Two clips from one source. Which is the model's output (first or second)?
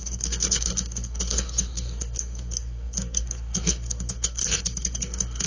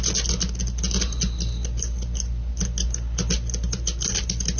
first